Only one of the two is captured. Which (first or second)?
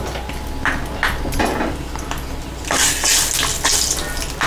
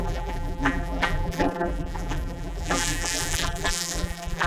first